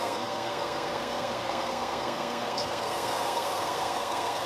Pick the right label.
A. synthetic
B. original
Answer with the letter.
A